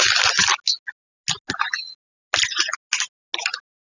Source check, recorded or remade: recorded